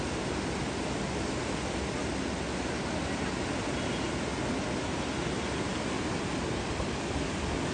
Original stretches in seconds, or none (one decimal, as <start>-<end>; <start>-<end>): 0.0-7.7